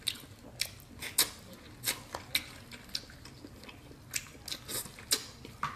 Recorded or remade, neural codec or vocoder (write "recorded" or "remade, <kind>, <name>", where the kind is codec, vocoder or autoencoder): recorded